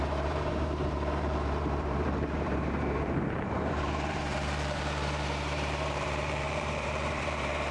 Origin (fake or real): fake